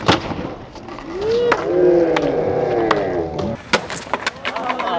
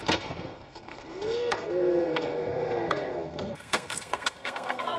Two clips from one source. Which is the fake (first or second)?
second